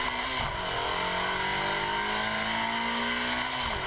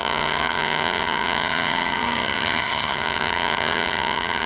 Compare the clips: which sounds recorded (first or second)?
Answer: first